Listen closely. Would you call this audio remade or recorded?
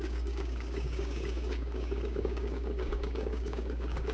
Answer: remade